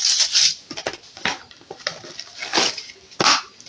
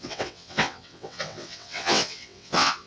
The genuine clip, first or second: first